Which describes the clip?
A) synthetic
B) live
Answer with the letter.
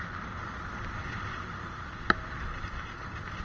B